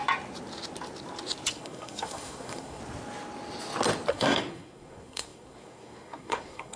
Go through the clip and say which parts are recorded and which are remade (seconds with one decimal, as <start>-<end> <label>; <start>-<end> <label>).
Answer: 0.0-1.5 recorded; 1.5-2.8 remade; 2.8-4.1 recorded; 4.1-6.8 remade